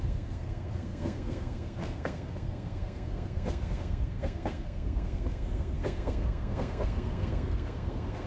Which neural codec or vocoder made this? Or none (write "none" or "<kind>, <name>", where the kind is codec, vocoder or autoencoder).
codec, SNAC